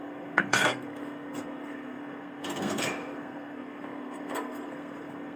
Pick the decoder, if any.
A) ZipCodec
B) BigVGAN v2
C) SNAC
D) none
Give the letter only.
C